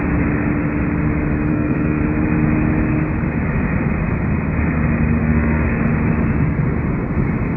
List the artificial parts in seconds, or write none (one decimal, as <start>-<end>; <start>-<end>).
1.5-2.0; 5.2-5.8